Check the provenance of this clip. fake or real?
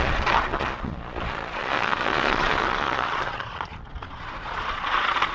fake